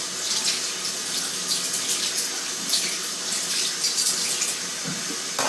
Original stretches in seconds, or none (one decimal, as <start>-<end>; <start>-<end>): 0.0-5.5